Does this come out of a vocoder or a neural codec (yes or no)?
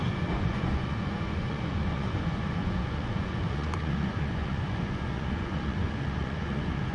yes